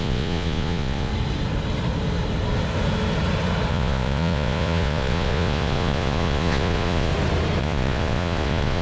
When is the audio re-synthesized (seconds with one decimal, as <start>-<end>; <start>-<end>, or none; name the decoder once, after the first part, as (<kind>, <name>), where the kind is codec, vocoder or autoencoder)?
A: 0.0-1.1 (vocoder, Vocos); 3.7-7.1; 7.6-8.8